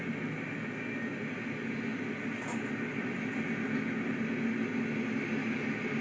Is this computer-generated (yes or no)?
no